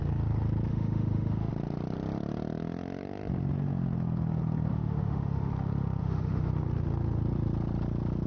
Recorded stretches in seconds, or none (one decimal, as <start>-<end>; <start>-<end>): 0.0-0.7; 1.5-4.7; 5.5-6.0; 6.5-8.3